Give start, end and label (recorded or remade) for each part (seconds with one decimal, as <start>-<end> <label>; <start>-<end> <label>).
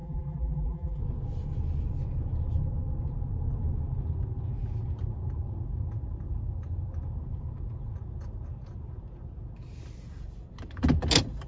0.0-1.0 remade; 1.0-11.5 recorded